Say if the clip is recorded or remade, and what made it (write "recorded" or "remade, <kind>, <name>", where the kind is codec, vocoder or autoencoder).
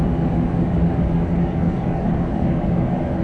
remade, codec, DAC